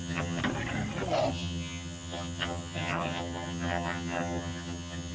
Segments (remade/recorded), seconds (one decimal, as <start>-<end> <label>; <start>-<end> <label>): 0.0-0.4 remade; 0.4-1.3 recorded; 1.3-5.1 remade